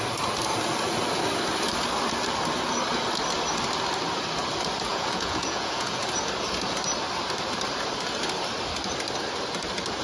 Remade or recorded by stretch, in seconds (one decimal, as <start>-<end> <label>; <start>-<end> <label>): 0.0-4.9 recorded; 4.9-6.1 remade; 6.1-10.0 recorded